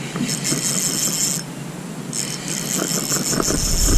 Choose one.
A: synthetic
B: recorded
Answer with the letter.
B